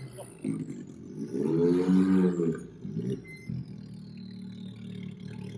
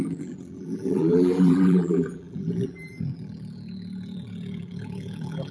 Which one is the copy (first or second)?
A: second